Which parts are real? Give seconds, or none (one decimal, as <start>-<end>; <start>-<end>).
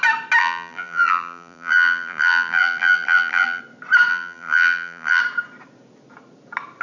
0.0-0.4; 3.6-4.1; 5.2-6.8